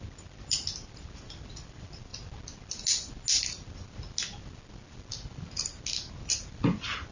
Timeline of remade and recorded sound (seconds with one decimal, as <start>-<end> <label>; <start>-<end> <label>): 0.0-7.1 recorded